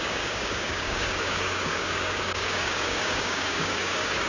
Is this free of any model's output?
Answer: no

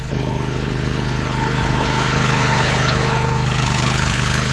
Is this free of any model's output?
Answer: no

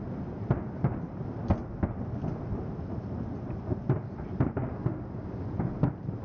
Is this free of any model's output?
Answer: yes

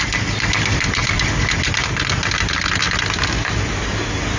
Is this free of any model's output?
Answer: yes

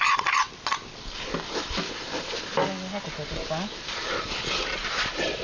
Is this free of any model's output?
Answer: yes